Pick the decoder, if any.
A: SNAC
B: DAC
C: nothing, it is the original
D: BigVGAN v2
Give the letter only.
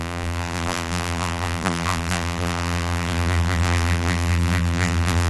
D